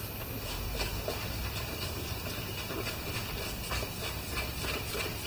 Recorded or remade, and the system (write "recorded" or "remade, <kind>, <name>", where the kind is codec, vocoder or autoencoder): recorded